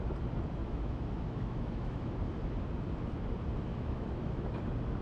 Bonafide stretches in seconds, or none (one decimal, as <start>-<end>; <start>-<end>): 0.0-0.6; 2.1-3.7; 4.6-5.0